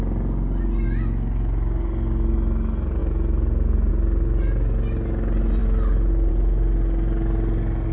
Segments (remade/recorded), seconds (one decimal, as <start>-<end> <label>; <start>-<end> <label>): 0.0-7.9 recorded